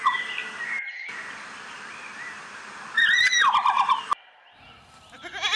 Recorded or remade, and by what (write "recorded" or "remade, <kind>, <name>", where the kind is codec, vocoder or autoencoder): recorded